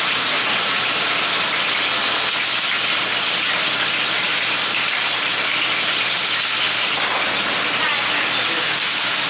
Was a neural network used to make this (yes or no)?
no